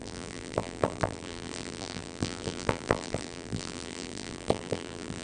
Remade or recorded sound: remade